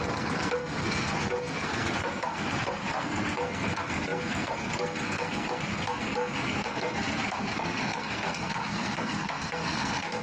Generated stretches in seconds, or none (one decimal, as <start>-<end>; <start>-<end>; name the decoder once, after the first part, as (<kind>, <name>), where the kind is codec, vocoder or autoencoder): 0.0-10.2 (codec, SNAC)